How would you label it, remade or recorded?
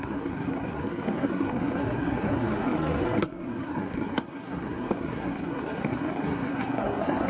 remade